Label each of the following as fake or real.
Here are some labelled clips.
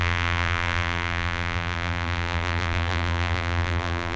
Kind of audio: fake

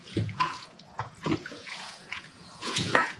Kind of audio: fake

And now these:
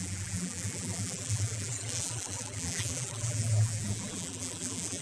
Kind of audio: fake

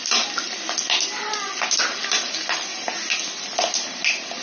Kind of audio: real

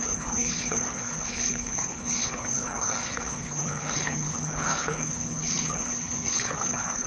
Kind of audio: fake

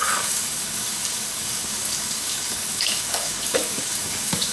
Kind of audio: fake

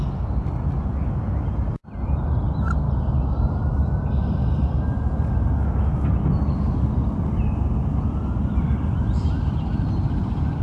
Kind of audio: real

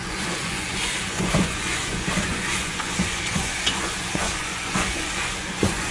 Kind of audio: fake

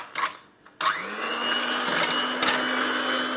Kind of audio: real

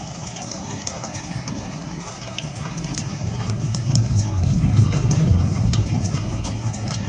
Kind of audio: fake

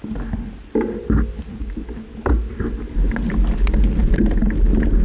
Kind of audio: real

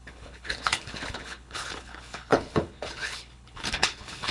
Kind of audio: fake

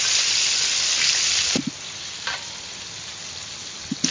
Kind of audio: real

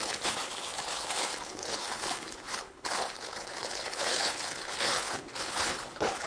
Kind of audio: fake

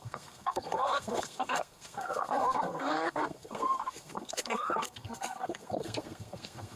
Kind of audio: fake